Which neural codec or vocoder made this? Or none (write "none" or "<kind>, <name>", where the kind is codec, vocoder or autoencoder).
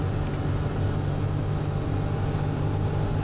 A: none